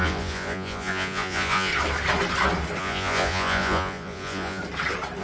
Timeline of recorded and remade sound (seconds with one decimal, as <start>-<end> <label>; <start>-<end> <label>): 0.0-1.7 remade; 1.7-2.8 recorded; 2.8-4.6 remade; 4.6-5.2 recorded